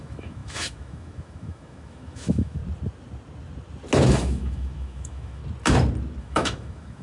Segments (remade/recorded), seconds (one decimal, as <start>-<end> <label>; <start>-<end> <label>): 0.0-2.6 remade; 2.6-4.1 recorded; 4.1-5.4 remade; 5.4-6.2 recorded; 6.2-7.0 remade